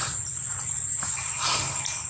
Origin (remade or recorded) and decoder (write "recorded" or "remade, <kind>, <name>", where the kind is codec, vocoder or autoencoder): recorded